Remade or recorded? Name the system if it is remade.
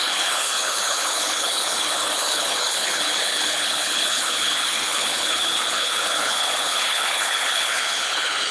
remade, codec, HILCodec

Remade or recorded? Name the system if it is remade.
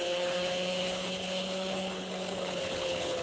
remade, codec, HILCodec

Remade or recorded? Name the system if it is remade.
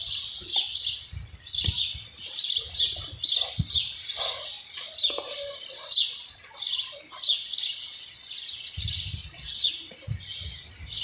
recorded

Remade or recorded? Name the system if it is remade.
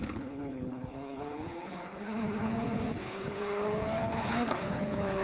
remade, codec, HILCodec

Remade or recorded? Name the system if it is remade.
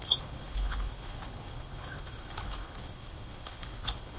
remade, codec, HILCodec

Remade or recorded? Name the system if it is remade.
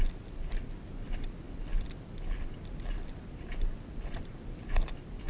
recorded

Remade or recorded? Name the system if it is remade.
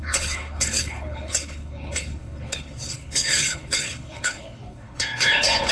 remade, codec, HILCodec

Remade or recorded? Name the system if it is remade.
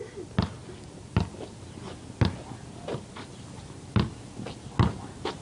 recorded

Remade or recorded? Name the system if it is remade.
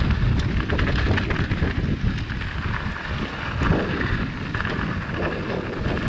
recorded